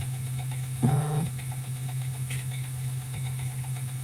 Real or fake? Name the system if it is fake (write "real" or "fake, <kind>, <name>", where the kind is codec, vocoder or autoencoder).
fake, autoencoder, DAC-VAE